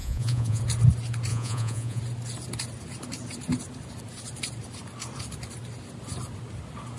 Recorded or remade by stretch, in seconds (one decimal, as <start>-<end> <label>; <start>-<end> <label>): 0.0-0.6 remade; 0.6-1.3 recorded; 1.3-2.0 remade; 2.0-7.0 recorded

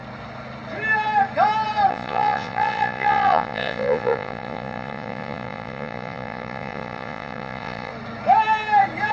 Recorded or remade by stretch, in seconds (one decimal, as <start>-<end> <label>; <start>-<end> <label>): 0.0-1.9 recorded; 1.9-7.9 remade; 7.9-9.1 recorded

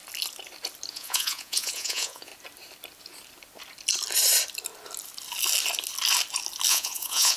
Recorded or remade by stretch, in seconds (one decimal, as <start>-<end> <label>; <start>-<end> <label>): 0.0-0.9 recorded; 0.9-2.3 remade; 2.3-6.7 recorded; 6.7-7.4 remade

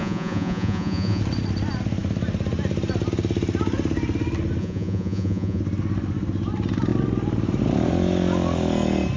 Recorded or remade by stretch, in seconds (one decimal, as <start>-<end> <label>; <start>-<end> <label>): 0.0-1.2 remade; 1.2-4.6 recorded; 4.6-5.6 remade; 5.6-9.2 recorded

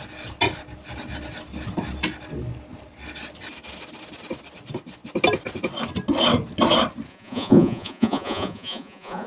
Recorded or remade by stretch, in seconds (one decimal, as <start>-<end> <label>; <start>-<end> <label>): 0.0-7.1 recorded; 7.1-9.3 remade